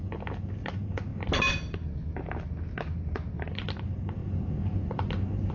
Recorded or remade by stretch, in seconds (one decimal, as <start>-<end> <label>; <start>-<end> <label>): 0.0-5.5 recorded